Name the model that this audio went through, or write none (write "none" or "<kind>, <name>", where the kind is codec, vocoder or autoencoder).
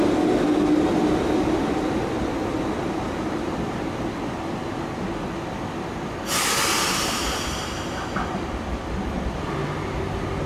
none